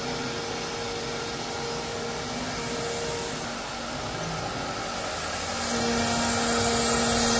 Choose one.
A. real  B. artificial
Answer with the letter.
A